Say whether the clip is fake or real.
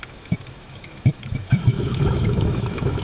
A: fake